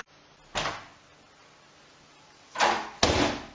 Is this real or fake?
real